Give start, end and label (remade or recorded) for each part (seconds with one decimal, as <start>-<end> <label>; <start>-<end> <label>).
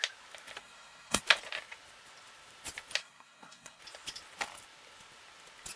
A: 0.0-0.6 recorded; 0.6-1.2 remade; 1.2-3.0 recorded; 3.0-3.8 remade; 3.8-5.8 recorded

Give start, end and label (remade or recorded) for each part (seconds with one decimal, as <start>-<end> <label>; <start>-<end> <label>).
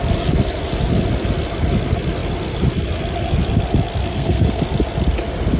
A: 0.0-4.0 recorded; 4.0-4.6 remade; 4.6-5.6 recorded